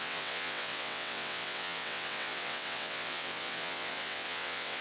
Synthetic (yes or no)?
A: yes